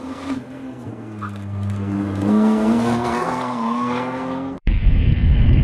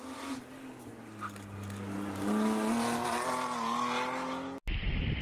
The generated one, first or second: first